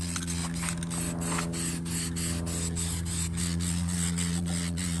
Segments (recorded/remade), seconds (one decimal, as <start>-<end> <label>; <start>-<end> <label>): 0.0-0.4 remade; 0.4-3.4 recorded; 3.4-5.0 remade